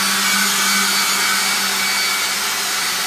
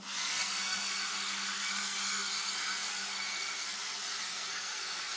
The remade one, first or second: second